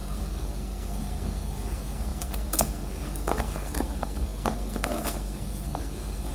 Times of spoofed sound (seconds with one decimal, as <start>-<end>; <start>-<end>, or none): 0.0-6.3